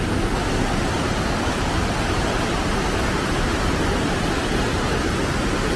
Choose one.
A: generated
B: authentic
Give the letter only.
B